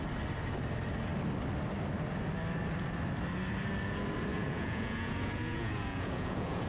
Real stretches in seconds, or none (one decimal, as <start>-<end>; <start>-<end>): 0.0-4.3